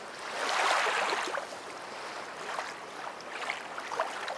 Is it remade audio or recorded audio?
recorded